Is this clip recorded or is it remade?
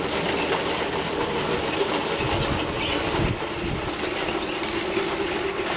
recorded